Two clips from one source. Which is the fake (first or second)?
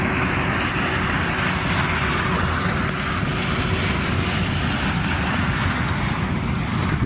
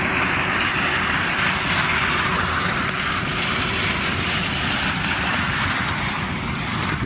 second